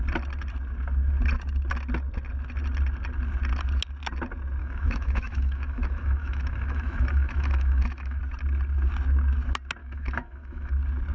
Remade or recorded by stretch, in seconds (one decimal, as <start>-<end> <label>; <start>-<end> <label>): 0.0-4.6 recorded; 4.6-8.2 remade; 8.2-9.8 recorded; 9.8-10.7 remade; 10.7-11.1 recorded